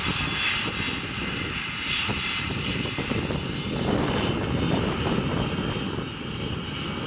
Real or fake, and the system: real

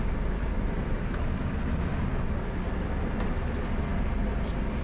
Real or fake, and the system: real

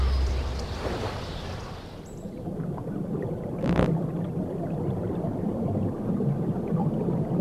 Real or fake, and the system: fake, vocoder, BigVGAN v2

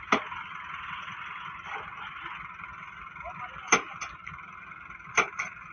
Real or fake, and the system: real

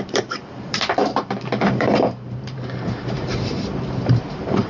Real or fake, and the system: fake, vocoder, BigVGAN v2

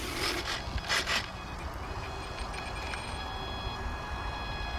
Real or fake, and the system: real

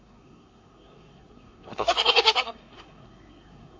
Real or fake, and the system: fake, codec, SNAC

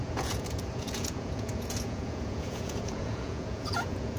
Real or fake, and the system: fake, vocoder, Vocos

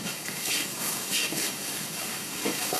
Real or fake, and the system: fake, codec, DAC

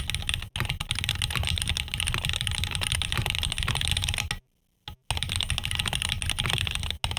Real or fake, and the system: real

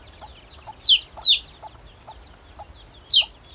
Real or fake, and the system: real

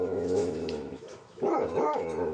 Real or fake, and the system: fake, autoencoder, DAC-VAE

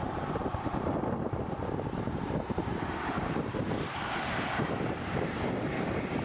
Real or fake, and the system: fake, vocoder, BigVGAN v2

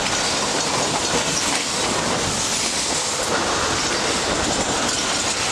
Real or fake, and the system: real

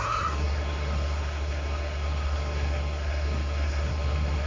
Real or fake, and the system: fake, codec, SNAC